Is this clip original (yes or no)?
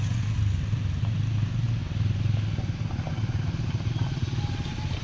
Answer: yes